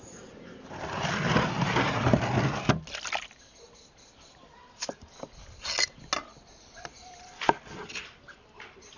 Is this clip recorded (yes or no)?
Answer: yes